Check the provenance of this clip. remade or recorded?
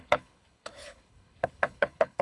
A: remade